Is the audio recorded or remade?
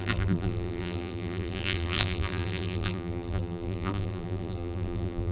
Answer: remade